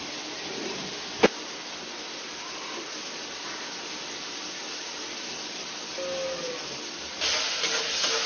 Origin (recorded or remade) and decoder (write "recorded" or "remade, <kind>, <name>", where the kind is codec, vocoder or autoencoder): recorded